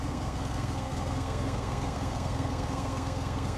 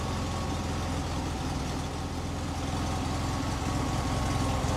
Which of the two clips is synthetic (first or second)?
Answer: first